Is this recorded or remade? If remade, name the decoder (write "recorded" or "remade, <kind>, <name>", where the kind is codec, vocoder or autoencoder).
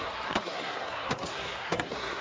remade, codec, SNAC